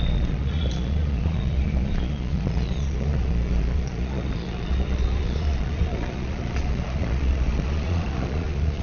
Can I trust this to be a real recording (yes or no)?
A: no